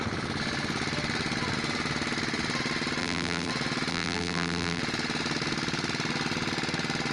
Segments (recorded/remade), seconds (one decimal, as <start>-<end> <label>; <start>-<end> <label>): 0.0-3.0 recorded; 3.0-3.5 remade; 3.5-3.9 recorded; 3.9-4.8 remade; 4.8-7.1 recorded